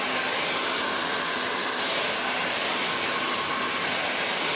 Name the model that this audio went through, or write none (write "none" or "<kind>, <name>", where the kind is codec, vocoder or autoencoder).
none